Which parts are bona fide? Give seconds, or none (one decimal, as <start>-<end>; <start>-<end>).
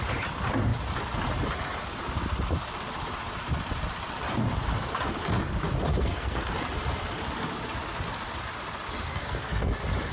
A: 0.0-5.9; 6.5-9.1; 9.7-10.1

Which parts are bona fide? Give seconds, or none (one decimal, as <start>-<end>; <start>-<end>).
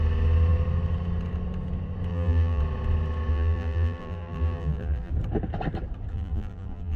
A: 0.0-2.1; 2.6-3.3; 5.1-6.1